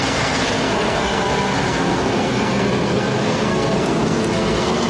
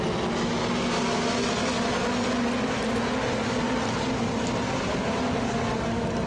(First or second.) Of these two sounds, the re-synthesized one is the first